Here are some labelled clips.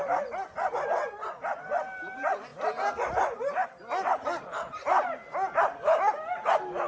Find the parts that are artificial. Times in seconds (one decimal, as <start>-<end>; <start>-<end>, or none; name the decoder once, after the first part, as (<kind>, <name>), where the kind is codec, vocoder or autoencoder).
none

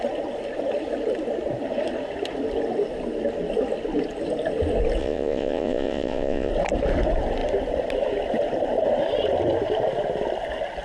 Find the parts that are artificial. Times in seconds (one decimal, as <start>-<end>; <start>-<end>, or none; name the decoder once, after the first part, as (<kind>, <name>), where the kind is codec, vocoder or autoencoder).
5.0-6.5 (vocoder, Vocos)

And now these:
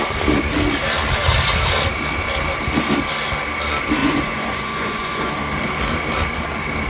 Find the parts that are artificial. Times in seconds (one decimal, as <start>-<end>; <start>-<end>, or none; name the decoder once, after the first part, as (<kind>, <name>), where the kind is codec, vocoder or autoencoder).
4.0-5.3 (vocoder, Vocos)

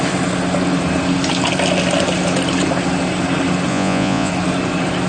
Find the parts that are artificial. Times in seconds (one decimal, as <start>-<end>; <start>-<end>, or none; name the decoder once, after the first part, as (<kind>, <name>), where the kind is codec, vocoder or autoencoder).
3.7-4.3 (vocoder, Vocos)